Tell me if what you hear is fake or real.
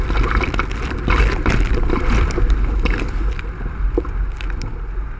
real